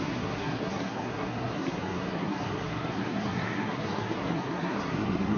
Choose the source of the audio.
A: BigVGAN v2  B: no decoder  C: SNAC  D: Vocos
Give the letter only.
C